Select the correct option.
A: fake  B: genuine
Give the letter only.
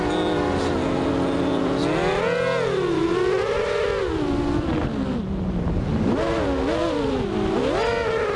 B